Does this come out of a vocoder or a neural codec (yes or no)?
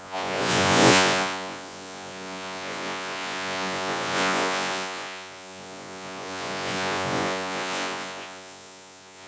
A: yes